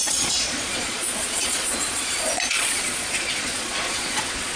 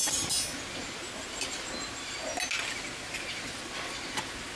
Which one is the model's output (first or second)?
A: first